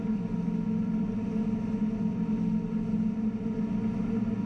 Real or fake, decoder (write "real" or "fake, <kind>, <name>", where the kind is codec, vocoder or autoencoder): real